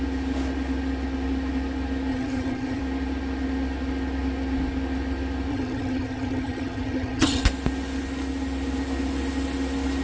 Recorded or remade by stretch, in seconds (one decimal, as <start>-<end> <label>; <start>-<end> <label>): 0.0-2.1 recorded; 2.1-2.8 remade; 2.8-5.5 recorded; 5.5-7.4 remade; 7.4-10.0 recorded